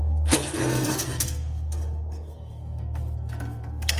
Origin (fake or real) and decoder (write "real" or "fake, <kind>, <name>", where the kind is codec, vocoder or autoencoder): fake, codec, SNAC